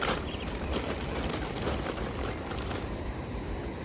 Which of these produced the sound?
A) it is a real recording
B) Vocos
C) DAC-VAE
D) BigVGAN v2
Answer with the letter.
D